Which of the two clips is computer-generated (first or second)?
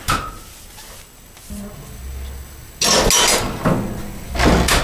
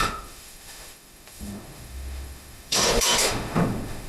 second